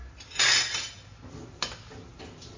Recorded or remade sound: recorded